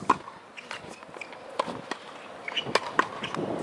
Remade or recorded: recorded